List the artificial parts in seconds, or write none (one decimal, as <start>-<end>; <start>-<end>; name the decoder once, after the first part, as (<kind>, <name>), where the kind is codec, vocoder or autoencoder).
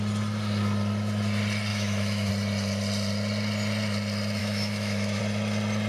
1.7-2.3 (autoencoder, DAC-VAE); 4.4-5.2